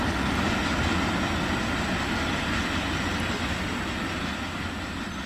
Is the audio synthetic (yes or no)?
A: no